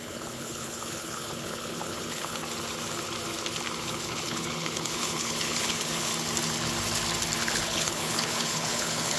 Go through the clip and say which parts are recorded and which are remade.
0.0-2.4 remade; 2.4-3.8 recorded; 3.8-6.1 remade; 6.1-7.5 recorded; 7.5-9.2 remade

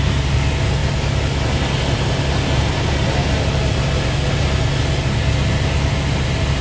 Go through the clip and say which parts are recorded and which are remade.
0.0-6.6 recorded

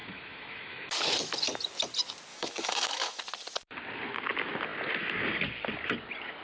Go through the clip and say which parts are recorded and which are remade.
0.0-0.9 remade; 0.9-2.3 recorded; 2.3-3.2 remade; 3.2-6.4 recorded

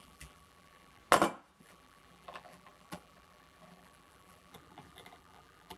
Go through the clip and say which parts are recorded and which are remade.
0.0-1.0 remade; 1.0-1.6 recorded; 1.6-5.8 remade

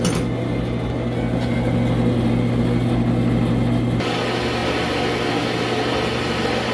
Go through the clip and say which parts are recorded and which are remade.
0.0-6.7 recorded